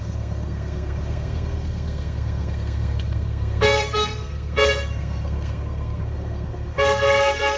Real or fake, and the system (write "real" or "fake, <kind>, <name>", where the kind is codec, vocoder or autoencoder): fake, codec, SNAC